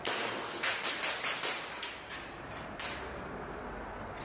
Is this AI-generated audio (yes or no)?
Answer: no